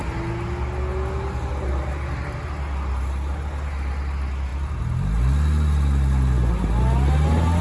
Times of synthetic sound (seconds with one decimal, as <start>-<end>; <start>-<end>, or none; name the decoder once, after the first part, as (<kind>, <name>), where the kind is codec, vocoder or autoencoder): none